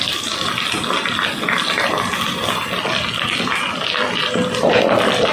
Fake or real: real